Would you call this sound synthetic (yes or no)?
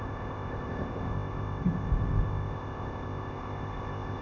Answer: yes